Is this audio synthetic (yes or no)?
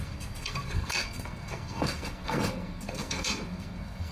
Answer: yes